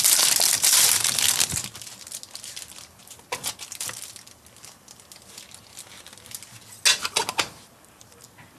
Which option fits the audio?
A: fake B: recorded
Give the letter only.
B